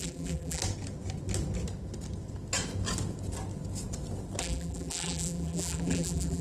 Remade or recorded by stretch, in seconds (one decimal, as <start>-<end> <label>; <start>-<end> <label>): 0.0-0.6 remade; 0.6-4.4 recorded; 4.4-6.4 remade